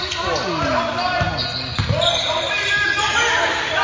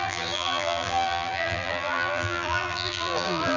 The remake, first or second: second